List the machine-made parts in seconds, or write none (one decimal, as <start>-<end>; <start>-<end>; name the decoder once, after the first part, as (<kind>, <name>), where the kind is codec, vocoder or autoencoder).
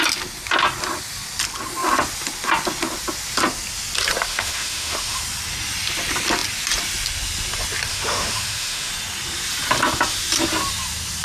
4.3-5.2 (autoencoder, DAC-VAE); 7.9-8.9